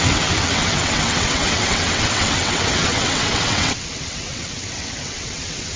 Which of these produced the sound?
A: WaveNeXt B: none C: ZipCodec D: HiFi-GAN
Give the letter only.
A